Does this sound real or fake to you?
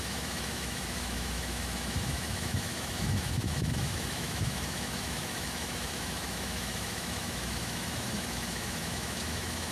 fake